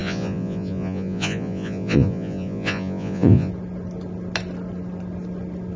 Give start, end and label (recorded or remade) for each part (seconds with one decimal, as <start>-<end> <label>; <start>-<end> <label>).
0.0-3.5 remade; 3.5-5.8 recorded